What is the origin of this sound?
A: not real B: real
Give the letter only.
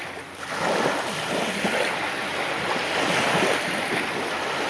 B